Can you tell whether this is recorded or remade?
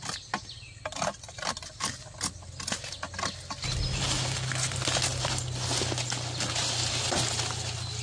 recorded